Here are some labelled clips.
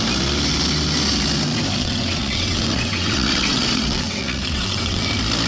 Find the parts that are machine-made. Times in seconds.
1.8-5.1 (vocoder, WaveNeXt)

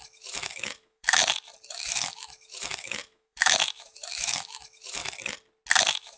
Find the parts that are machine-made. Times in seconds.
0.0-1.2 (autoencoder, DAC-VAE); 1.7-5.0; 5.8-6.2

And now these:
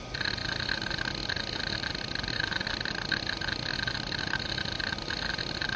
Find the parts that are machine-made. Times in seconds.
none